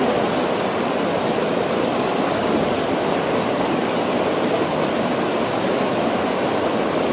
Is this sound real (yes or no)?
yes